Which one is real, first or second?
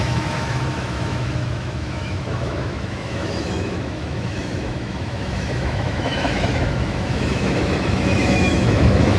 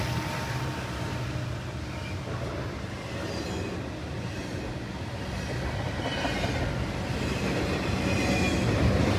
second